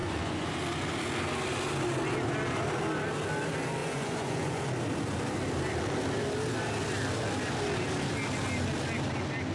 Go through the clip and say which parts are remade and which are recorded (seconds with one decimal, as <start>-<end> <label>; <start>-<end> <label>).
0.0-0.5 remade; 0.5-3.8 recorded; 3.8-4.6 remade; 4.6-9.5 recorded